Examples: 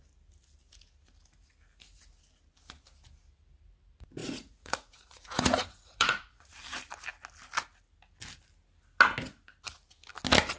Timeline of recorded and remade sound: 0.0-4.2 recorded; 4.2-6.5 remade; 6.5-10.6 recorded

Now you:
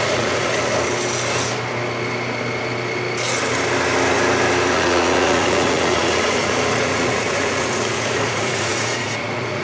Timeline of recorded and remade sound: 0.0-0.5 remade; 0.5-4.7 recorded; 4.7-9.6 remade

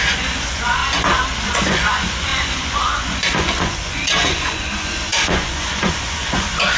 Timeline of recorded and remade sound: 0.0-0.8 remade; 0.8-1.4 recorded; 1.4-6.8 remade

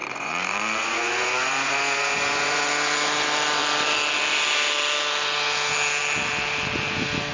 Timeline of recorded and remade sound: 0.0-2.6 remade; 2.6-7.3 recorded

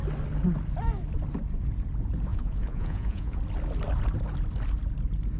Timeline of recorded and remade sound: 0.0-2.3 recorded; 2.3-3.4 remade; 3.4-5.4 recorded

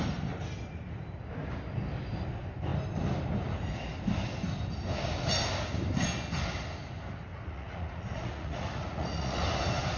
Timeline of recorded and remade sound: 0.0-7.3 recorded; 7.3-9.4 remade; 9.4-10.0 recorded

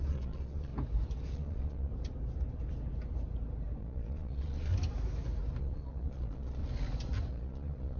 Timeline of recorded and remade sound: 0.0-0.7 remade; 0.7-1.3 recorded; 1.3-1.9 remade; 1.9-3.8 recorded; 3.8-4.7 remade; 4.7-5.6 recorded; 5.6-6.6 remade; 6.6-7.3 recorded; 7.3-8.0 remade